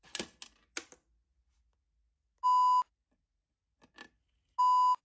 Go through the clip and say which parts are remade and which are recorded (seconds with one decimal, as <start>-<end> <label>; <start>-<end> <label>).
0.0-5.0 recorded